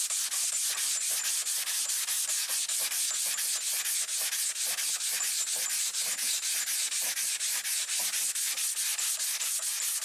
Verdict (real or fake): real